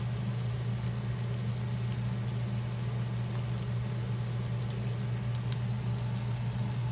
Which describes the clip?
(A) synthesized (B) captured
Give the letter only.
B